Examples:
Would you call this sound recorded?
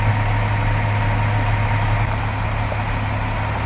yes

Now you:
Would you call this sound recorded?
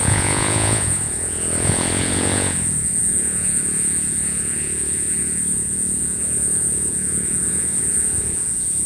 no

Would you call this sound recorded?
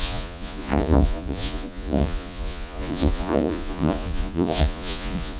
no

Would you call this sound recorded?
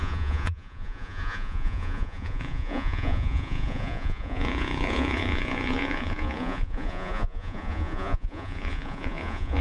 no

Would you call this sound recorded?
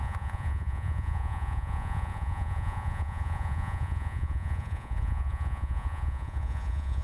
no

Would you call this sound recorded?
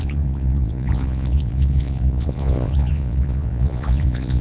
no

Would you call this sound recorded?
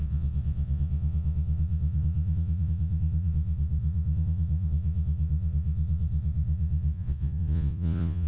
no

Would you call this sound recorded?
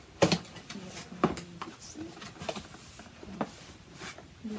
yes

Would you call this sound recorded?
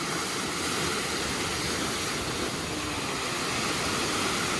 yes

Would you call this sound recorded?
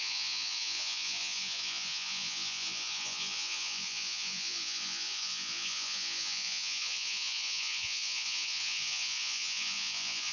no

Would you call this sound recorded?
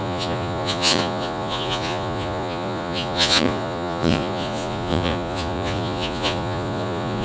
no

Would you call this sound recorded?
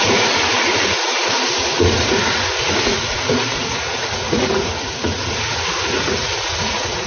no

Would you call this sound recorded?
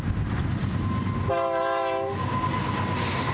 yes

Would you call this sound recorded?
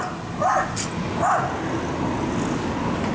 yes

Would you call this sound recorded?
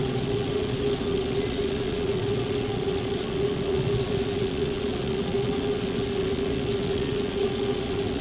no